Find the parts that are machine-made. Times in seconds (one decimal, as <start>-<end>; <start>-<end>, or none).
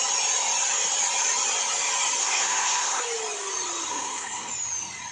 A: 2.2-3.0; 3.9-4.5